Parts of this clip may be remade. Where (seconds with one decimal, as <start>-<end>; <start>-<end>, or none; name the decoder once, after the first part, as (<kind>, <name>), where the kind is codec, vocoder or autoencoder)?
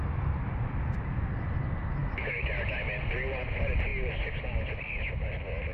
2.0-2.5 (autoencoder, DAC-VAE)